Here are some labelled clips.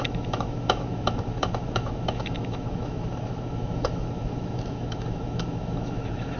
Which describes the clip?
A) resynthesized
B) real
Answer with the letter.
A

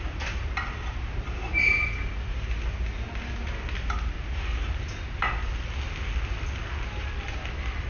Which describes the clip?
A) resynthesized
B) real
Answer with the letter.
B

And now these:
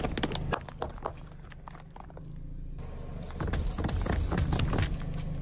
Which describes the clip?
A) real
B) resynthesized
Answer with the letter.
A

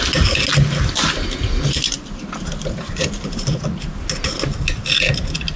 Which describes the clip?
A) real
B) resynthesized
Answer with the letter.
A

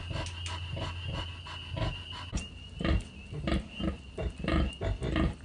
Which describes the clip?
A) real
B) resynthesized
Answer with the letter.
A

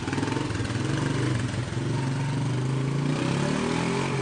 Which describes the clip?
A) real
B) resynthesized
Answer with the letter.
A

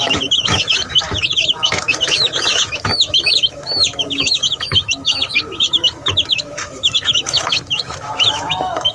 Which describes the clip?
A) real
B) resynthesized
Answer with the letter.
B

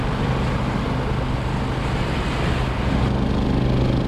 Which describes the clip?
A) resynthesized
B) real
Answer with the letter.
B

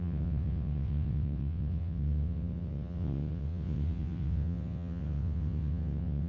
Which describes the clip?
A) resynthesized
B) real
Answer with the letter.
A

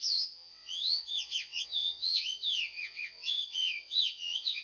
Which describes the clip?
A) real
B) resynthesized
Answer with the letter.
B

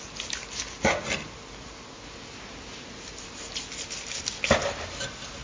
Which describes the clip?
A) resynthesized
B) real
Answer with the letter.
B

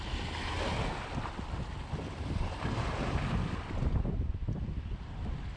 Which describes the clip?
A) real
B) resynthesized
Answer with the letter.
A